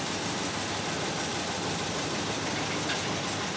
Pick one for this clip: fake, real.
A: real